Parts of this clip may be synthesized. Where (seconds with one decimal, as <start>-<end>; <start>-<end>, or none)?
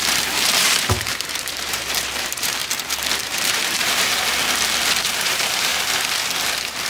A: 0.0-2.6; 3.2-4.1; 5.0-5.7